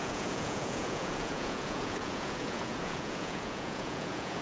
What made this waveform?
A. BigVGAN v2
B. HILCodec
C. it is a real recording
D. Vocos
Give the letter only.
D